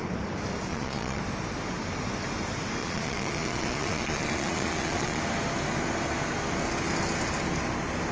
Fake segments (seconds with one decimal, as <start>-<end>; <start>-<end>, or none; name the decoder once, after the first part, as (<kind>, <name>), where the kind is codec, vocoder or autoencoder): 0.7-1.2 (vocoder, Vocos); 2.8-5.2